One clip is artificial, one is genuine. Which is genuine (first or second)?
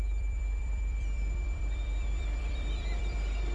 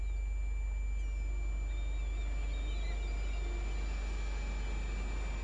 second